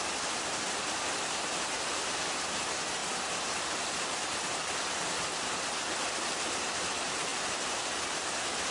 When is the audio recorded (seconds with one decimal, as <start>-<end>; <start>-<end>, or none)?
0.0-7.3; 8.2-8.7